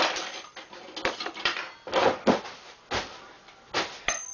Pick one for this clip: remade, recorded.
recorded